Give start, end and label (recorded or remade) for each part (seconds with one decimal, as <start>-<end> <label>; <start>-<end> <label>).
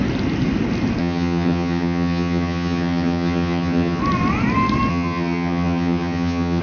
0.0-1.0 recorded; 1.0-4.0 remade; 4.0-4.9 recorded; 4.9-6.6 remade